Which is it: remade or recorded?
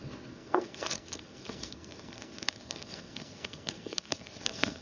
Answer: remade